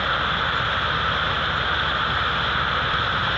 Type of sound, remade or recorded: recorded